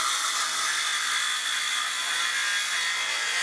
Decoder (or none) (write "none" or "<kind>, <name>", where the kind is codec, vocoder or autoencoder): none